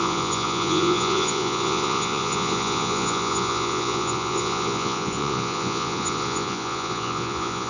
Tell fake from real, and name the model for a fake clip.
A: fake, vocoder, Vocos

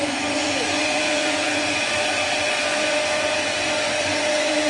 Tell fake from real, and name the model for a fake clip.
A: fake, vocoder, Vocos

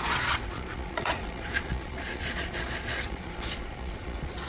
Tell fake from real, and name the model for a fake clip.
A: fake, vocoder, Vocos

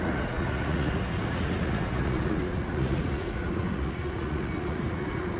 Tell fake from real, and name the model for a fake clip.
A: fake, vocoder, Vocos